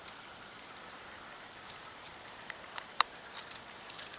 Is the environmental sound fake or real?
fake